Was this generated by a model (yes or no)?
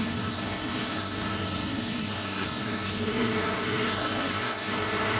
yes